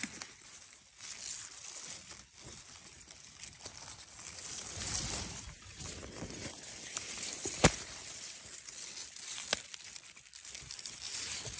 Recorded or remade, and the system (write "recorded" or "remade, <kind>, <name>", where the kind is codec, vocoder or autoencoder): recorded